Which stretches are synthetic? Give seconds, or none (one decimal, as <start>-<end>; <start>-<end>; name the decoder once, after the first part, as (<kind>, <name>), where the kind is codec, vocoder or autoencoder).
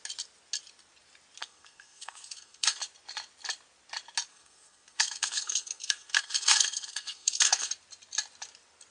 1.4-2.8 (codec, SNAC); 4.3-7.7